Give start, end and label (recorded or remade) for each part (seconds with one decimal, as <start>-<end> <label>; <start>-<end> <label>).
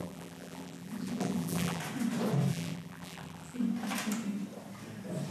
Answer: 0.0-1.8 remade; 1.8-2.5 recorded; 2.5-3.6 remade; 3.6-5.3 recorded